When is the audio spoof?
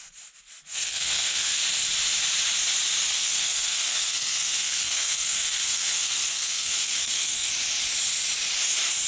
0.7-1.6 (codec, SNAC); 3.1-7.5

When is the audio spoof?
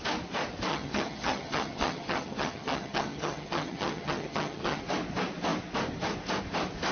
0.7-4.8 (vocoder, HiFi-GAN)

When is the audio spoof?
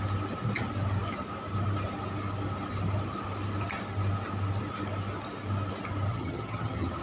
6.1-7.0 (vocoder, HiFi-GAN)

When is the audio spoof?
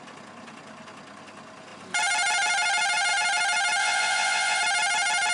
3.8-4.6 (vocoder, Vocos)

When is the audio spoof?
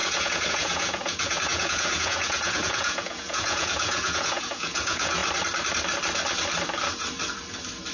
0.0-5.2 (vocoder, Vocos)